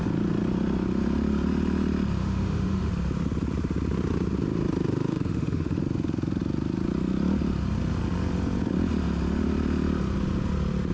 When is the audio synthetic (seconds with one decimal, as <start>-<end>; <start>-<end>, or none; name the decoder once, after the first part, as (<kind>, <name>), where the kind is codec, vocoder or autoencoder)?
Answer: 2.2-2.9 (autoencoder, DAC-VAE); 5.1-5.8